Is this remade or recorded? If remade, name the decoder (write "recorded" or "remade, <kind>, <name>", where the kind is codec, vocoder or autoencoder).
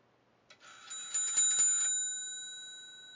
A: recorded